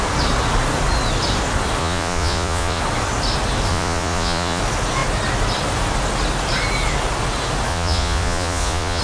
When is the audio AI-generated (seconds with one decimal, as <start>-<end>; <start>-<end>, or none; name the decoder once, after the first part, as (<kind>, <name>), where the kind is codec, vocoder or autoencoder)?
1.8-2.8 (vocoder, Vocos); 3.7-4.6; 7.7-9.0